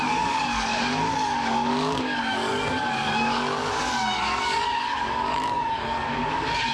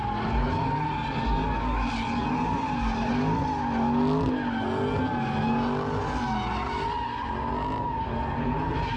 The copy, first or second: first